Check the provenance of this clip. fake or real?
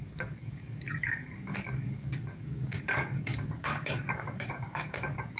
fake